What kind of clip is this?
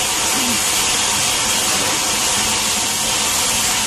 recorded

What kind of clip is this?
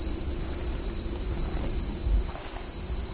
recorded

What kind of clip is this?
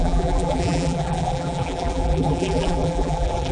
remade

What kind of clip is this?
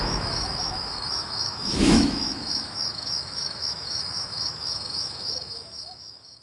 remade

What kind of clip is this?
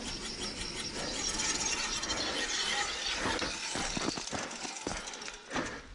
recorded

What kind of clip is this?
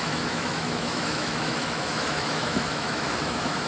remade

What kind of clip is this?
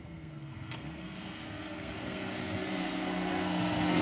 remade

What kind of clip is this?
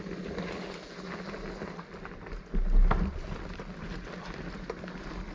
recorded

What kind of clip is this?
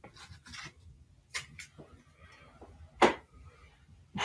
recorded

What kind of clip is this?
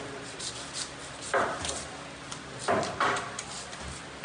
recorded